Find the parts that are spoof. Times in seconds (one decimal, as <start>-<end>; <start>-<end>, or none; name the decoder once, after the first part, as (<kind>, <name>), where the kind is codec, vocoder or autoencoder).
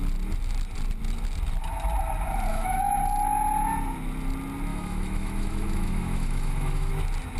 2.5-3.0 (autoencoder, DAC-VAE); 4.7-6.9